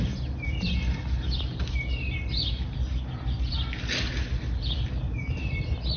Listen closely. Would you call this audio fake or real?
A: real